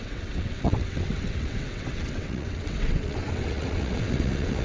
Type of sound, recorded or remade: remade